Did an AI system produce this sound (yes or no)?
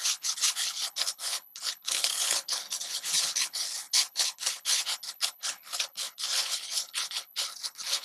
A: yes